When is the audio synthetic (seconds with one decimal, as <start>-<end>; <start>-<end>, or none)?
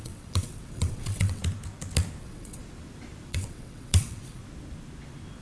0.0-1.4; 2.2-2.6; 3.3-4.4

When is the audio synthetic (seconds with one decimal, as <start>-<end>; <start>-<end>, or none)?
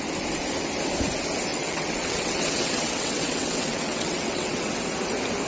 1.5-4.8